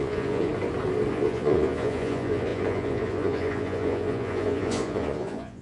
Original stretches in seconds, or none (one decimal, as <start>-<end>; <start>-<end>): 0.5-1.1